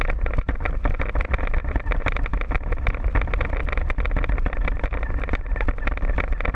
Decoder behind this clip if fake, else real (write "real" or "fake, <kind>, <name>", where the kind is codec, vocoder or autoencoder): fake, vocoder, BigVGAN v2